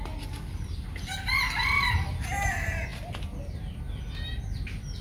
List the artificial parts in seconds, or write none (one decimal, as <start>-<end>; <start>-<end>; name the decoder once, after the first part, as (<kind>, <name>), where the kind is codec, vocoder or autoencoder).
none